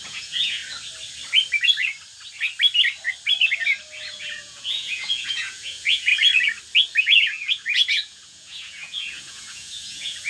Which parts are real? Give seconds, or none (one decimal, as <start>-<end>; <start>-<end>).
0.6-4.1; 6.1-7.0